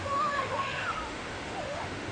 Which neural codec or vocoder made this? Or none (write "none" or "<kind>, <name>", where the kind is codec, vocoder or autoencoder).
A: autoencoder, DAC-VAE